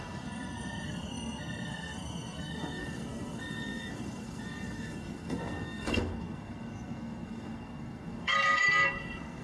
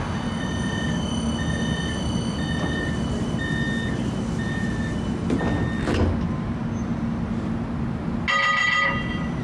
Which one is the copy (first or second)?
first